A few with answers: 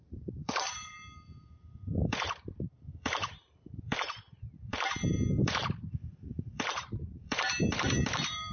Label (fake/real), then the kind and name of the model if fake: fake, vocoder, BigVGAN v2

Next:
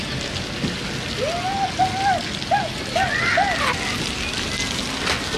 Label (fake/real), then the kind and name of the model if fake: real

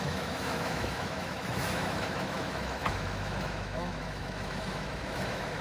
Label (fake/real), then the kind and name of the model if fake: fake, autoencoder, DAC-VAE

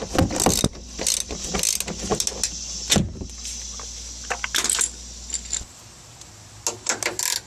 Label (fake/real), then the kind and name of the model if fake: real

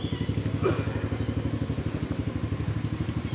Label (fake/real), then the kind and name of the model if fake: real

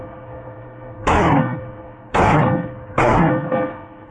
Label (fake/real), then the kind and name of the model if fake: fake, codec, SNAC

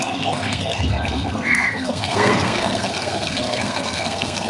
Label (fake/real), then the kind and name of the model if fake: fake, codec, SNAC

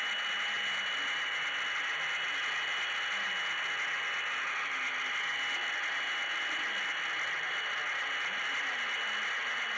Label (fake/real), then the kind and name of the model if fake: real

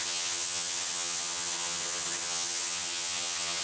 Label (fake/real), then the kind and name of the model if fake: fake, vocoder, HiFi-GAN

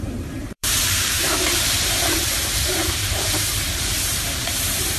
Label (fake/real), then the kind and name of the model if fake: fake, vocoder, BigVGAN v2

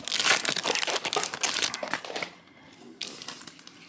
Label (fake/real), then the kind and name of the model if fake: real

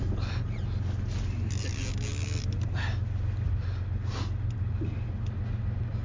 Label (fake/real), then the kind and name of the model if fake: real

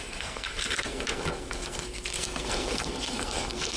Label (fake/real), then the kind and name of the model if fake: fake, codec, SNAC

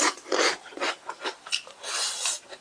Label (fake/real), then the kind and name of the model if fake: real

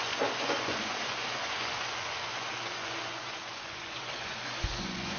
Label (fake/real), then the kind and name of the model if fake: fake, vocoder, Vocos